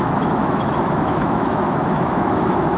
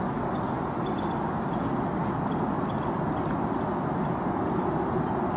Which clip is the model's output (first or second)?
first